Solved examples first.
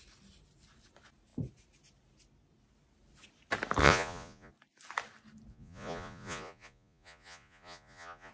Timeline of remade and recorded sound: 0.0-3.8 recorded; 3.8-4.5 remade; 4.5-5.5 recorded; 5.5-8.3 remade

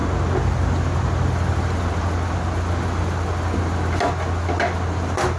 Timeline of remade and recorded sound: 0.0-5.4 recorded

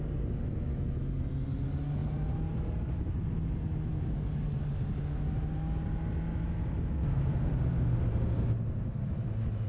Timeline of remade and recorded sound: 0.0-9.7 recorded

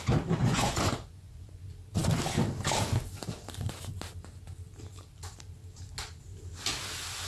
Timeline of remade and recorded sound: 0.0-0.4 recorded; 0.4-1.6 remade; 1.6-7.3 recorded

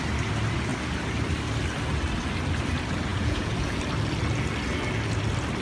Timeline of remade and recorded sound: 0.0-3.1 recorded; 3.1-3.8 remade; 3.8-5.6 recorded

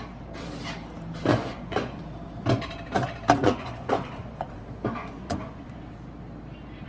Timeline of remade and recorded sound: 0.0-1.3 recorded; 1.3-2.0 remade; 2.0-3.4 recorded; 3.4-4.6 remade; 4.6-5.0 recorded; 5.0-5.8 remade; 5.8-6.9 recorded

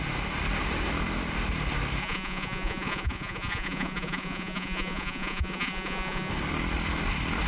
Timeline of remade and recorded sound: 0.0-2.0 recorded; 2.0-6.3 remade; 6.3-7.5 recorded

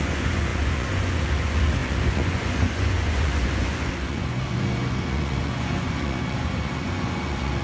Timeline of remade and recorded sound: 0.0-7.6 remade